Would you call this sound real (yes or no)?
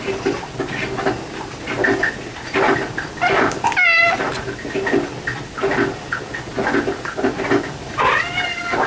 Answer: yes